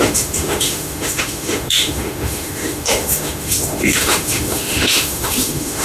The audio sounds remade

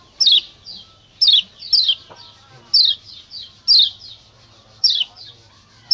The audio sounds recorded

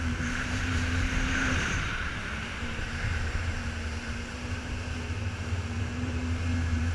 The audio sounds remade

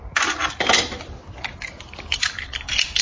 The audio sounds recorded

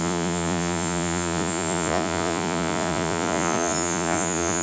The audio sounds remade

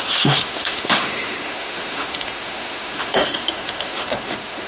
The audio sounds remade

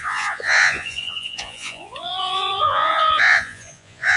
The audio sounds remade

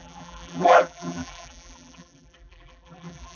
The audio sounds remade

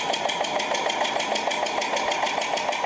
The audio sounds recorded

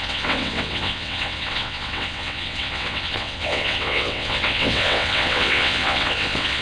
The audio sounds remade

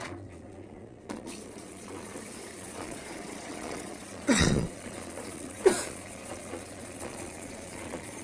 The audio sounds remade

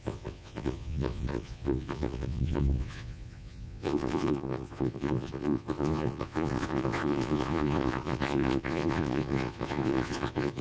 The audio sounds remade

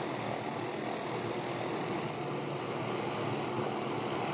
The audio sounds recorded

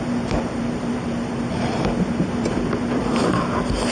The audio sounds remade